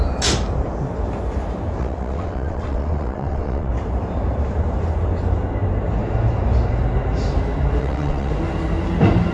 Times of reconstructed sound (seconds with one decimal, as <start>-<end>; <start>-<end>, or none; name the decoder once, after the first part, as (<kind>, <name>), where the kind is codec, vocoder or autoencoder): 1.8-3.7 (vocoder, WaveNeXt); 7.8-8.3